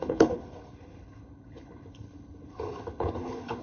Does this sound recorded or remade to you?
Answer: remade